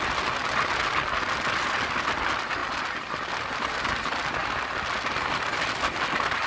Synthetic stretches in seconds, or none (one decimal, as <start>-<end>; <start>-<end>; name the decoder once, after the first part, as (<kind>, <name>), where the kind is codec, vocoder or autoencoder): none